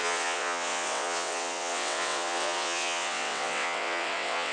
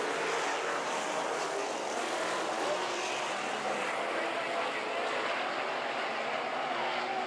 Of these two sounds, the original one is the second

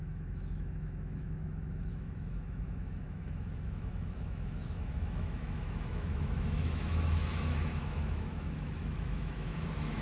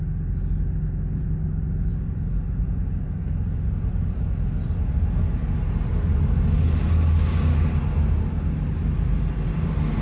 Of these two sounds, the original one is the second